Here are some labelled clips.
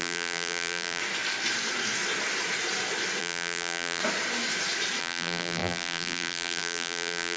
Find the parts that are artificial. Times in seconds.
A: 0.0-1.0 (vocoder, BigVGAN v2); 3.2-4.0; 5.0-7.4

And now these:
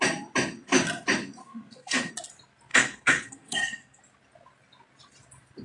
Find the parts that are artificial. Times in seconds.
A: 1.4-2.1 (codec, SNAC); 2.7-4.0

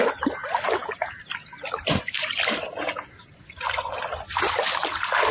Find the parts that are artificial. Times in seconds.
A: none

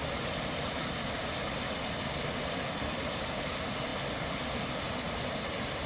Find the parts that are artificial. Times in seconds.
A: none

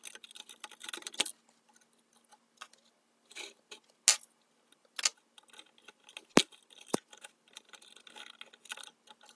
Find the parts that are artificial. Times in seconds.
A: 6.4-7.9 (vocoder, BigVGAN v2)

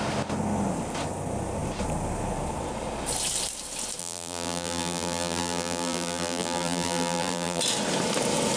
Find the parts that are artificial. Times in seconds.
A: 4.0-7.6 (vocoder, BigVGAN v2)

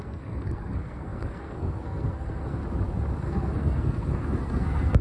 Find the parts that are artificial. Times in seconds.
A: 0.0-2.6 (codec, SNAC); 3.2-5.0

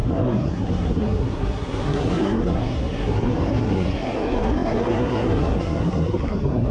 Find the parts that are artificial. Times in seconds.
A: 0.0-6.7 (codec, SNAC)